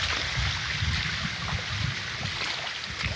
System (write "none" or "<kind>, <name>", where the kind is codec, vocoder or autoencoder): none